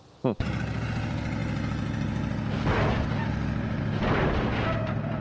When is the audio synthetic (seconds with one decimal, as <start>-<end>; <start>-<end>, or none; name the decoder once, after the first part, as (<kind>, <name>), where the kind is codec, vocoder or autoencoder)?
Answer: none